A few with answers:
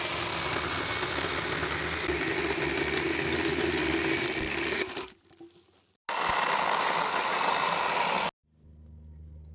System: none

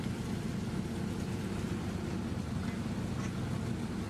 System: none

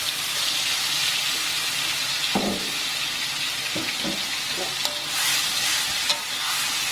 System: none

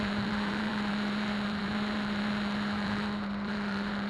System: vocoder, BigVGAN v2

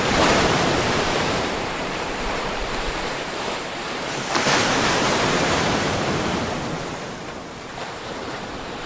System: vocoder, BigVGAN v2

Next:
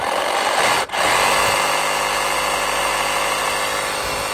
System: none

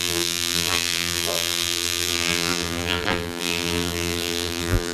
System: vocoder, BigVGAN v2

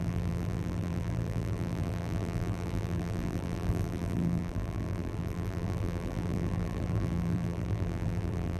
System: vocoder, BigVGAN v2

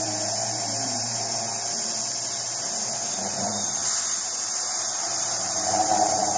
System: vocoder, BigVGAN v2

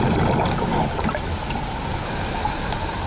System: none